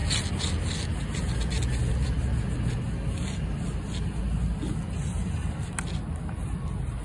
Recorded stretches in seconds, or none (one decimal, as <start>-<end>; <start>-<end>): 0.0-7.0